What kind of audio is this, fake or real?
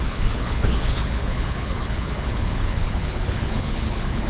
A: fake